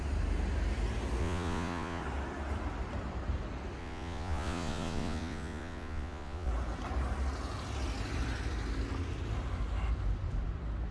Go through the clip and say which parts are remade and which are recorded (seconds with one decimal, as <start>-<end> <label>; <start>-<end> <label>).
0.0-1.2 recorded; 1.2-2.0 remade; 2.0-3.8 recorded; 3.8-6.5 remade; 6.5-10.9 recorded